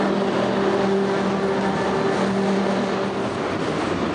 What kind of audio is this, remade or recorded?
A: recorded